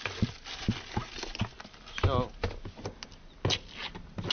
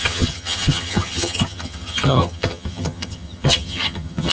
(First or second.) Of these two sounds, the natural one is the first